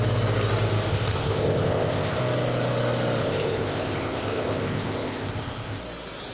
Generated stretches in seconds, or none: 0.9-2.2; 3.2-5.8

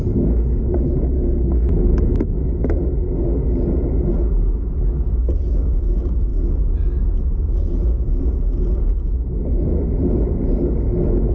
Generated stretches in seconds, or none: none

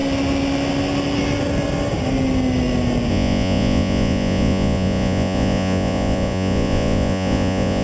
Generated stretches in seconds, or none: 3.1-7.8